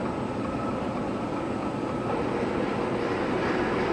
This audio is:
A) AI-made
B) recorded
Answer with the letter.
B